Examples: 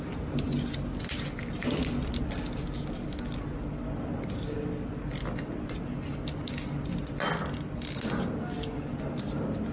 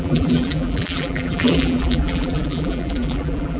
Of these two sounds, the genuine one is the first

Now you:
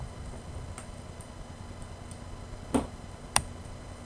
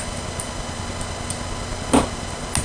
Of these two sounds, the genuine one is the second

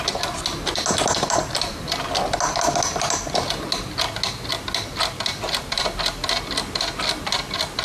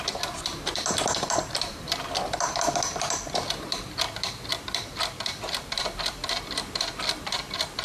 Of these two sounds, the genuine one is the first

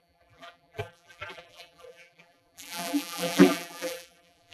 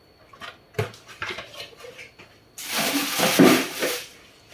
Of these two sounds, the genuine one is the second